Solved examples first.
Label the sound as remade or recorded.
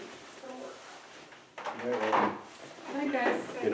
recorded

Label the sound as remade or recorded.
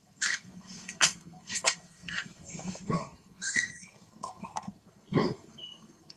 remade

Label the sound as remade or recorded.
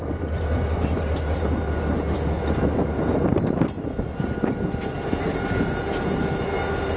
recorded